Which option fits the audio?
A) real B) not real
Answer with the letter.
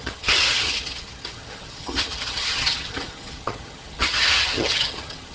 B